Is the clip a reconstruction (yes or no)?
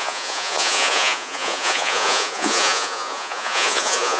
yes